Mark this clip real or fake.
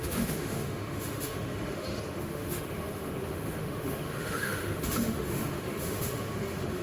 fake